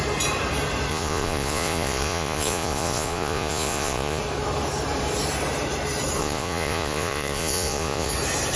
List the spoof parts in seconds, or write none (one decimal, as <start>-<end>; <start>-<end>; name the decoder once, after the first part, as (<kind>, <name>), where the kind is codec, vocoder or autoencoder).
0.9-4.2 (vocoder, Vocos); 6.2-8.1